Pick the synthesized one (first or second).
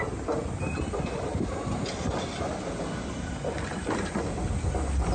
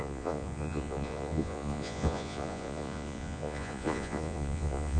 second